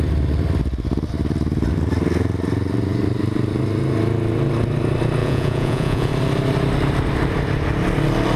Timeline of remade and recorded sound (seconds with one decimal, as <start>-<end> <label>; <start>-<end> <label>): 0.0-5.2 recorded; 5.2-6.1 remade; 6.1-8.4 recorded